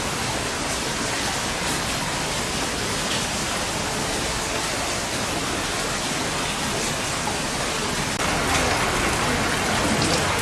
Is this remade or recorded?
recorded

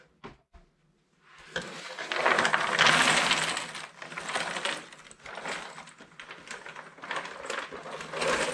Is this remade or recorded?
recorded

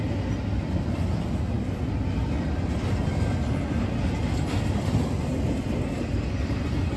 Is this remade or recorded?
recorded